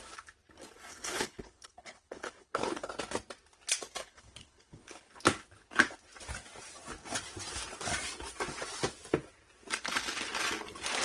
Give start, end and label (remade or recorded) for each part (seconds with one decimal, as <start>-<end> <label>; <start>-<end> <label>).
0.0-0.9 recorded; 0.9-2.9 remade; 2.9-4.0 recorded; 4.0-5.2 remade; 5.2-11.0 recorded